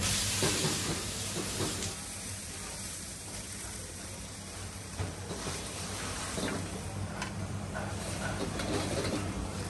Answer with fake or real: fake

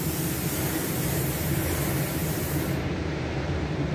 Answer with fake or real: fake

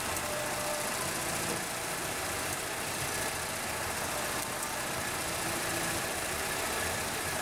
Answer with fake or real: fake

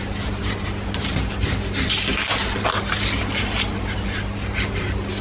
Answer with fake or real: real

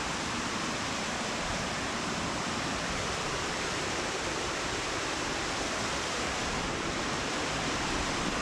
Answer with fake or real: fake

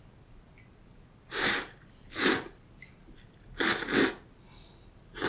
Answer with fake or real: real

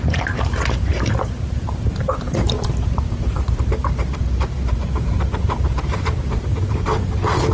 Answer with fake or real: fake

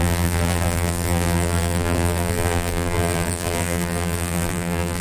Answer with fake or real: fake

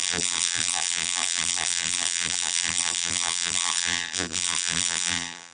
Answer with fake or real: fake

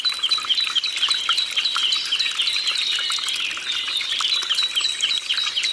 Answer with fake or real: real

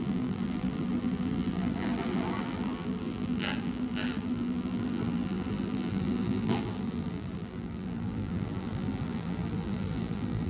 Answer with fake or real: fake